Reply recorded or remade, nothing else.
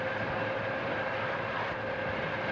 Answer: recorded